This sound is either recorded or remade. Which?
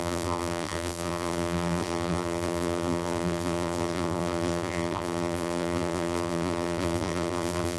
remade